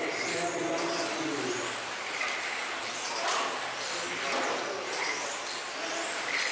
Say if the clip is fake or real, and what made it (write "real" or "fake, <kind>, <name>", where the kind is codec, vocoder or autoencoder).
real